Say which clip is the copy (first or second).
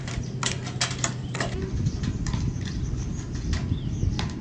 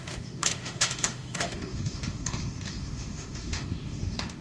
second